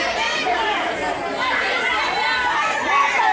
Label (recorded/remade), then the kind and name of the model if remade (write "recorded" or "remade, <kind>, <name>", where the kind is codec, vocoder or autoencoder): recorded